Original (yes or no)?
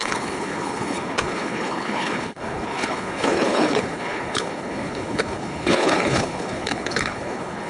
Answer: no